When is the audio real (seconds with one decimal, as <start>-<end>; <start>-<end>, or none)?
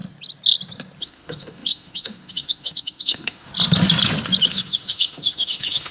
0.0-1.0; 3.5-4.5